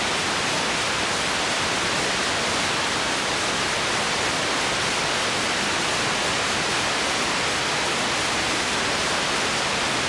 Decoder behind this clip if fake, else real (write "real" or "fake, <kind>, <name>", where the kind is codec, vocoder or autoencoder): real